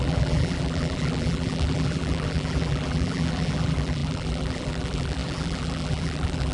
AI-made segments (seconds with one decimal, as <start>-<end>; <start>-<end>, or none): 0.0-6.5